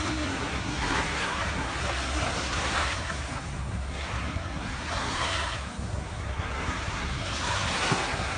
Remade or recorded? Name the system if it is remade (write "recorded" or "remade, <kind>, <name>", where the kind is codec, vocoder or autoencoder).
remade, codec, SNAC